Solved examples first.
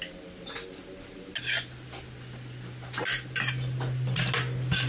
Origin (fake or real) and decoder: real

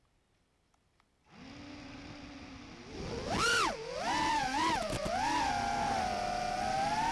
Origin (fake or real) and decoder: real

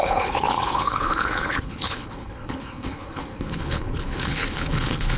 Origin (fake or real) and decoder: fake, codec, HILCodec